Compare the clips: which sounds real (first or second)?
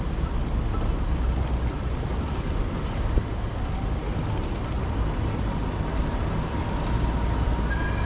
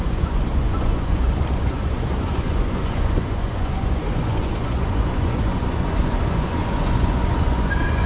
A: first